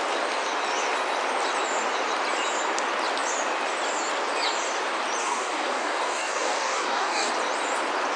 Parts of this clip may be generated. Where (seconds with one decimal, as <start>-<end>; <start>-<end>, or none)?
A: 5.2-7.3